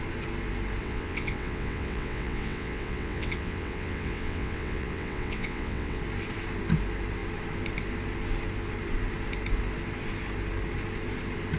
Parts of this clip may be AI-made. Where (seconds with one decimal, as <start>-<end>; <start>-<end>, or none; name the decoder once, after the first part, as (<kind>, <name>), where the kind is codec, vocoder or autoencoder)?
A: 0.8-6.0 (vocoder, WaveNeXt)

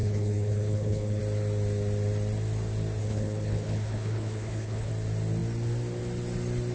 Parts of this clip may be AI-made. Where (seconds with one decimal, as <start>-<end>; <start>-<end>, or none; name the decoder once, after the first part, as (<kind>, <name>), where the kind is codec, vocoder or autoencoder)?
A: 0.0-1.2 (codec, HILCodec); 3.0-4.9